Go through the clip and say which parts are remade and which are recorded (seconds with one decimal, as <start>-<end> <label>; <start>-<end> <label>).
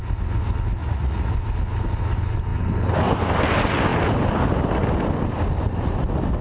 0.0-0.8 recorded; 0.8-1.3 remade; 1.3-6.4 recorded